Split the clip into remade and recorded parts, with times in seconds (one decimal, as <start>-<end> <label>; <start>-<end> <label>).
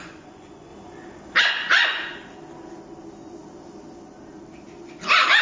0.0-0.7 remade; 0.7-1.4 recorded; 1.4-2.1 remade; 2.1-5.4 recorded